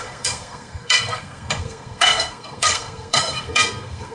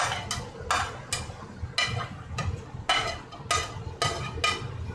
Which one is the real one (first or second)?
second